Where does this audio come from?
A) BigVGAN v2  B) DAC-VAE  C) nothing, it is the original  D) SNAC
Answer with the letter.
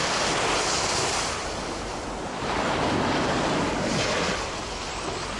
C